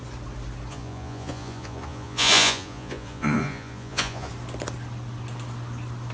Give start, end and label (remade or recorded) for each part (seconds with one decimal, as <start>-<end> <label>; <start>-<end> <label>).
0.0-0.7 recorded; 0.7-4.3 remade; 4.3-6.1 recorded